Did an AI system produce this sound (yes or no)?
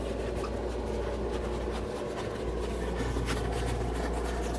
no